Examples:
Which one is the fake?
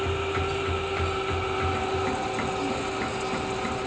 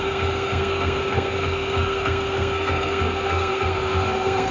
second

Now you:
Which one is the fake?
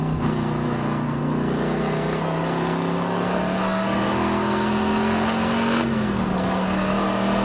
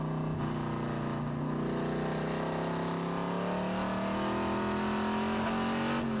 first